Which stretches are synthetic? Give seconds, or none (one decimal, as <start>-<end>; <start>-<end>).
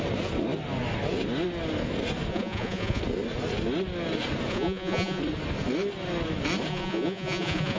2.3-3.0; 4.5-5.2; 6.7-7.8